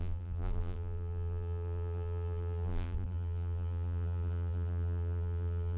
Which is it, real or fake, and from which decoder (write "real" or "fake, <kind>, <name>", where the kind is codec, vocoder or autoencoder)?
fake, vocoder, BigVGAN v2